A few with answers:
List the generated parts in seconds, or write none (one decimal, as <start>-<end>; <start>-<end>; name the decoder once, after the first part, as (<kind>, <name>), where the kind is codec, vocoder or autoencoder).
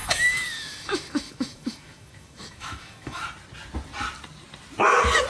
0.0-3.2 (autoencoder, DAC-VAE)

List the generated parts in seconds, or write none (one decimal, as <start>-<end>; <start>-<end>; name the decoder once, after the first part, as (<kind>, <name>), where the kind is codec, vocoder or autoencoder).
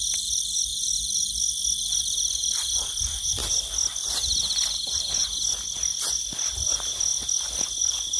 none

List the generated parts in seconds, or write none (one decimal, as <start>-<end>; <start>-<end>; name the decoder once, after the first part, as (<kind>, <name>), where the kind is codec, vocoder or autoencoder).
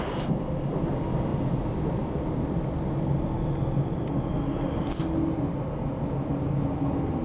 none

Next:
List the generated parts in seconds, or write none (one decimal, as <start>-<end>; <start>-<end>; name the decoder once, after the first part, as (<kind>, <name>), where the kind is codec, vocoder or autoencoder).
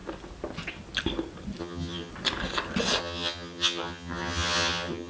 1.6-2.1 (vocoder, HiFi-GAN); 3.0-5.1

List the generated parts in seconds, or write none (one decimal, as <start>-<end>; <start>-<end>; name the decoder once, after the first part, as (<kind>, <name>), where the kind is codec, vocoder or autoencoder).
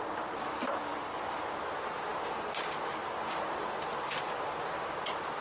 0.9-1.5 (vocoder, BigVGAN v2)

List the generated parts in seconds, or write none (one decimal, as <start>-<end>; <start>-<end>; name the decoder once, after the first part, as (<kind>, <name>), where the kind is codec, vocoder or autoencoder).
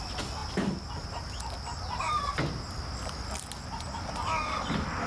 none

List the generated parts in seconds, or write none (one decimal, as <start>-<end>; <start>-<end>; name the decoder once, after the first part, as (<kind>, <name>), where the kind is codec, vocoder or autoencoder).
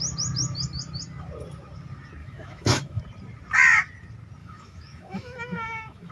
2.2-3.0 (autoencoder, DAC-VAE); 4.4-6.1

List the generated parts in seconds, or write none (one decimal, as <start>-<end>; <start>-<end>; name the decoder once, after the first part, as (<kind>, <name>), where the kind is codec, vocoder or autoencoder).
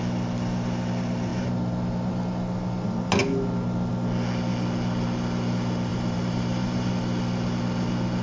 1.3-2.1 (vocoder, BigVGAN v2); 5.9-6.9